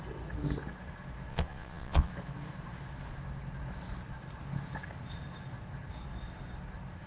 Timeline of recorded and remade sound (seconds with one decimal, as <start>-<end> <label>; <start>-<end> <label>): 0.0-1.3 recorded; 1.3-2.1 remade; 2.1-7.1 recorded